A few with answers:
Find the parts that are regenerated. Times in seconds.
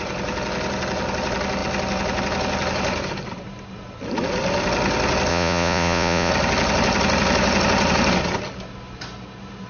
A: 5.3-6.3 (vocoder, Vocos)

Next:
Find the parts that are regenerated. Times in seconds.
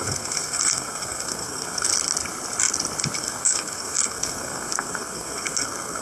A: 0.0-1.9 (codec, SNAC); 3.2-6.0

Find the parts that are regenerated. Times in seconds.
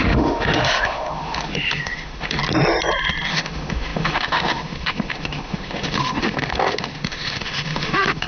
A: 0.0-2.4 (autoencoder, DAC-VAE); 3.3-8.3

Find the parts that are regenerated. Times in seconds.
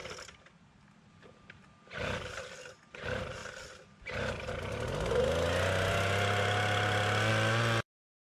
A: 1.1-3.4 (vocoder, BigVGAN v2); 7.3-8.4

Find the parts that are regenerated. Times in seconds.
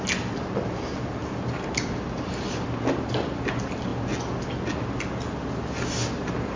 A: none